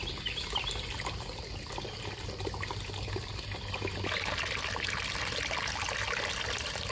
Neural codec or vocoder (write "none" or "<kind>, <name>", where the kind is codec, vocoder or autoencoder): none